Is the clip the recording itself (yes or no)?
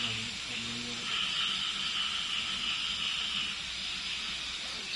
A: yes